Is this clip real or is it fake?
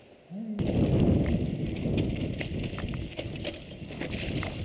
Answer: real